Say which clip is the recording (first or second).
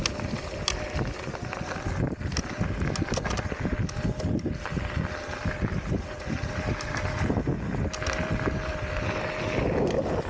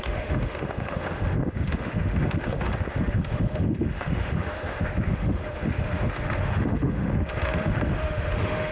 first